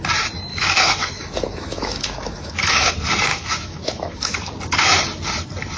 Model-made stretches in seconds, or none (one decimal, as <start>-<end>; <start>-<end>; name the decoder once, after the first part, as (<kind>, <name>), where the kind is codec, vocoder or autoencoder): 0.5-2.9 (autoencoder, DAC-VAE); 3.3-4.5